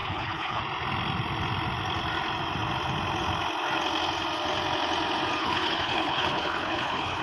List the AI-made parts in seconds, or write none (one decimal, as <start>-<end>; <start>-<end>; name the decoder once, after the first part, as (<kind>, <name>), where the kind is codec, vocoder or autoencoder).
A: 0.0-0.6 (codec, HILCodec); 5.4-7.2